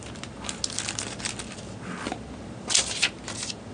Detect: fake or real real